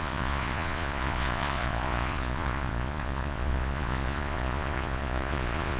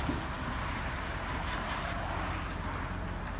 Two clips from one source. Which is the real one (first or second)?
second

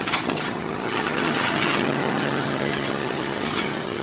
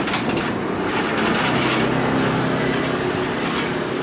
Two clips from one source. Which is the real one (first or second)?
second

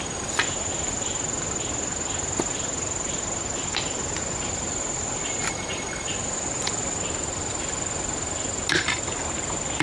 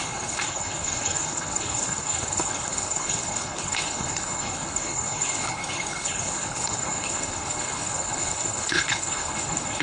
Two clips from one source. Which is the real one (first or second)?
first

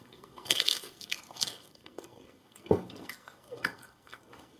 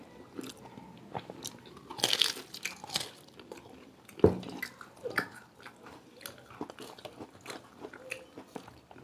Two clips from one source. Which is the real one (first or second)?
second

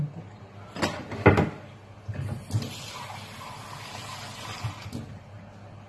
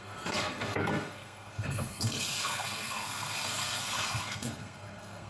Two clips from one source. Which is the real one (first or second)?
first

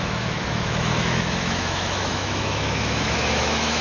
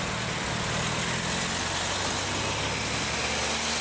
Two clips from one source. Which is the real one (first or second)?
second